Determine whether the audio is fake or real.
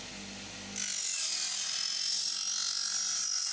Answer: real